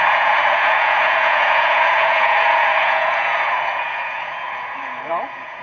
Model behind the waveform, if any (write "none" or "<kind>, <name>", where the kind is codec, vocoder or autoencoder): vocoder, Vocos